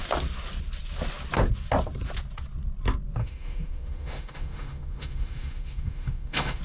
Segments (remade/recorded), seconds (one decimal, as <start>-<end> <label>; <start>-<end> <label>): 0.0-3.2 recorded; 3.2-6.6 remade